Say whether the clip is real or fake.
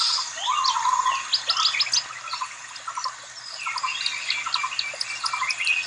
real